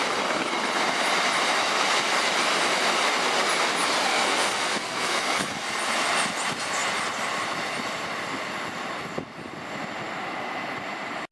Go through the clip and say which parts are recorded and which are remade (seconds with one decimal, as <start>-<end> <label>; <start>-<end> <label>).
0.0-4.1 recorded; 4.1-5.5 remade; 5.5-11.3 recorded